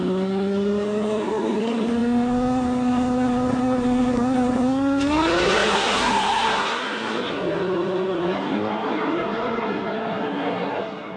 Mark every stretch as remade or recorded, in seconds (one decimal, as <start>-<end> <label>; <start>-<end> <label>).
0.0-11.2 remade